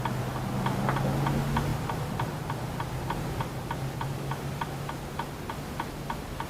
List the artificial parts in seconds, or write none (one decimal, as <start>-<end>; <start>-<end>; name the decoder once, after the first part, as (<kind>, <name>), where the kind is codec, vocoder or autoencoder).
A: 1.7-4.8 (vocoder, BigVGAN v2)